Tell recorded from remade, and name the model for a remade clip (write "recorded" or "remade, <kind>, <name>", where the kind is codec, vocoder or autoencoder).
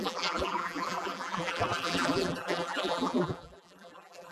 remade, vocoder, BigVGAN v2